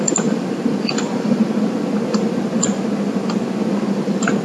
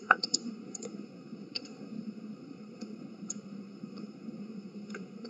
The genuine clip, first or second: first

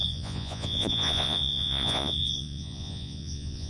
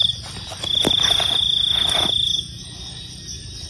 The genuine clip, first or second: second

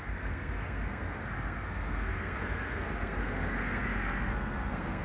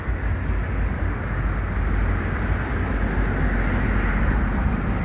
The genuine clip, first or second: second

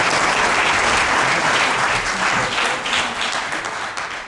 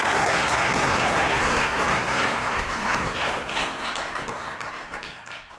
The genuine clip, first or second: first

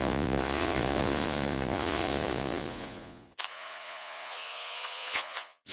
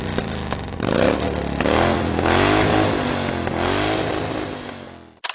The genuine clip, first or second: second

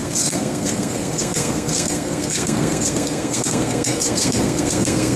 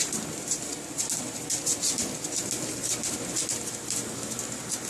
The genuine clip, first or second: second